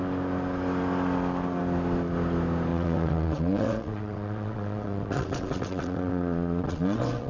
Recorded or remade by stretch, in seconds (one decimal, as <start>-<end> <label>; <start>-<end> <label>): 0.0-2.7 recorded; 2.7-7.3 remade